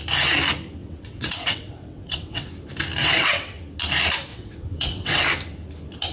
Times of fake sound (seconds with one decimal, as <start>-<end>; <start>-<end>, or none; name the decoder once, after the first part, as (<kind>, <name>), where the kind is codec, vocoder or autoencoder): 0.8-2.5 (vocoder, WaveNeXt); 3.0-3.6; 4.3-5.2